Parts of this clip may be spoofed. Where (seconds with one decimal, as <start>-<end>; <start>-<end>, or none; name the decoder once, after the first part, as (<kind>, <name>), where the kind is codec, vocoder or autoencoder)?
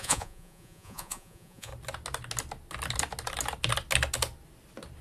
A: 0.0-1.7 (vocoder, Vocos)